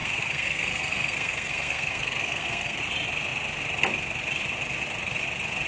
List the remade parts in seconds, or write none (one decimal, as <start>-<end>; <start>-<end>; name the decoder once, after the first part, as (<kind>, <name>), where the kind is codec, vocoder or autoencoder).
0.0-2.8 (codec, SNAC)